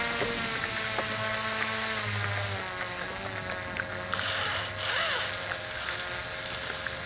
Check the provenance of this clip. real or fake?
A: real